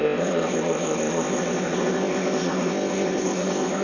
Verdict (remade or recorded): remade